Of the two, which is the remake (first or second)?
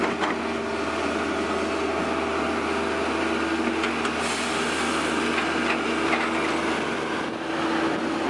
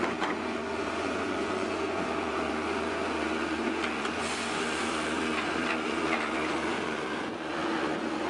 second